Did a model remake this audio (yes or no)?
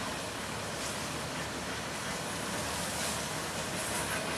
no